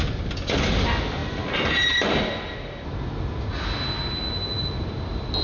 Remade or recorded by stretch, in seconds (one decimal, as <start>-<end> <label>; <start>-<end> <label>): 0.0-5.4 recorded